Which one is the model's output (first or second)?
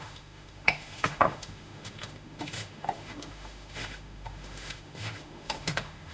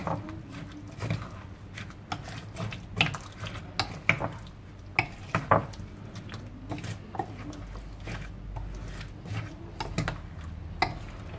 first